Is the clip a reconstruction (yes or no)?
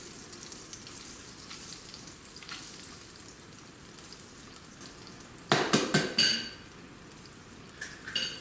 no